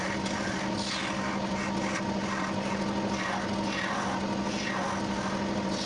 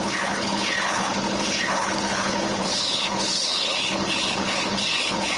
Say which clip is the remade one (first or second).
second